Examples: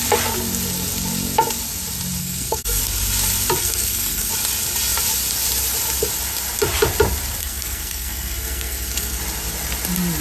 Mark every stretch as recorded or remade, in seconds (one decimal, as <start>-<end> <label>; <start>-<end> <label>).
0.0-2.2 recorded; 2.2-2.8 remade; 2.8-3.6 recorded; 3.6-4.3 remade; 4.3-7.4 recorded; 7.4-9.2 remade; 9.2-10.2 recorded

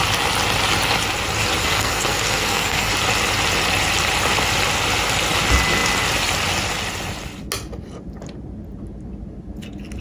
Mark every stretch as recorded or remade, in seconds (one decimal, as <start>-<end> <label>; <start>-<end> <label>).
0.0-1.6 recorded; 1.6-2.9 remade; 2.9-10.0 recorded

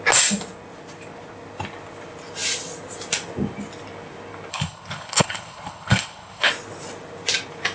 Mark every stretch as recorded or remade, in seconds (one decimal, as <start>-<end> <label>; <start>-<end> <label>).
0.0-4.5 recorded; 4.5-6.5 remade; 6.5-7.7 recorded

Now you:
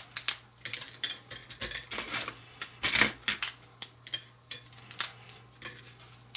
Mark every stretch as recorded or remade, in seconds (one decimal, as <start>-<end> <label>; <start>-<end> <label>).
0.0-6.4 recorded

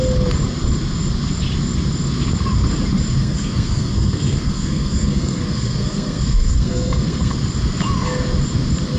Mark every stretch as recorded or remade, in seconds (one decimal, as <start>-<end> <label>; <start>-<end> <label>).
0.0-3.2 recorded; 3.2-7.3 remade; 7.3-9.0 recorded

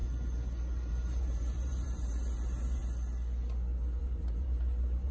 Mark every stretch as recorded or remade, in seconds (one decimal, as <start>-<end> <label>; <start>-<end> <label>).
0.0-0.9 recorded; 0.9-2.8 remade; 2.8-4.0 recorded; 4.0-5.1 remade

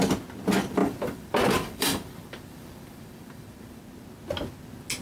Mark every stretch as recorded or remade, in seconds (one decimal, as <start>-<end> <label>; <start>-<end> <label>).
0.0-0.8 recorded; 0.8-3.8 remade; 3.8-5.0 recorded

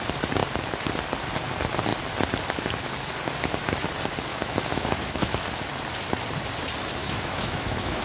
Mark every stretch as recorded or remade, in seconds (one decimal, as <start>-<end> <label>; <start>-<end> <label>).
0.0-4.3 recorded; 4.3-5.4 remade; 5.4-7.0 recorded; 7.0-8.0 remade